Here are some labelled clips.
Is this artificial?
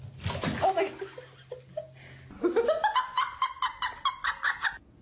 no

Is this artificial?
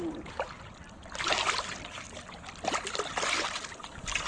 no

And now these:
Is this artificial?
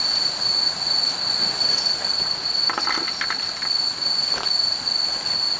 no